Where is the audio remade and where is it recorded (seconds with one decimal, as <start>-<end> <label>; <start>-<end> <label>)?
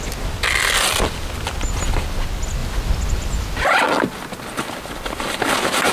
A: 0.0-5.9 recorded